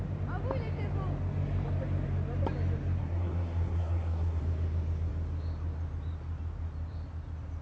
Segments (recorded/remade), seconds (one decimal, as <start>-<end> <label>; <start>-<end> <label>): 0.0-3.0 recorded; 3.0-4.4 remade; 4.4-7.6 recorded